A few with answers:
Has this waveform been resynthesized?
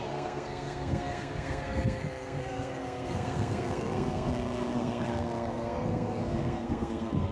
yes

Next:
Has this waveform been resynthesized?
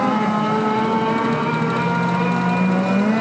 no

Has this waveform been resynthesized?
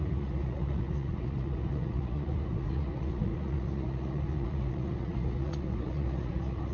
yes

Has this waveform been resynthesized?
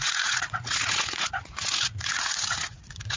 yes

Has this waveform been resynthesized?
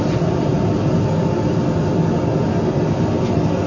no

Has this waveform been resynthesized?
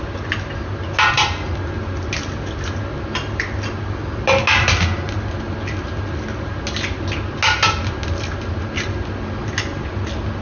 no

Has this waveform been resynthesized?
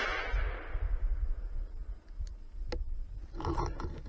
no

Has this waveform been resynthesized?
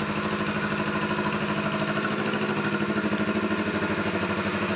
no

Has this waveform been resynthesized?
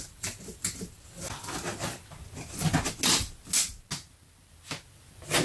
no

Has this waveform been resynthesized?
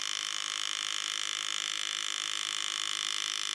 yes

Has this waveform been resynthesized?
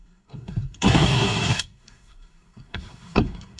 yes